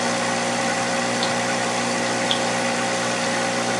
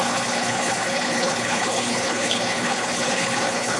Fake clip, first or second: second